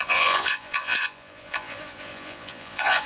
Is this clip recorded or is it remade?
remade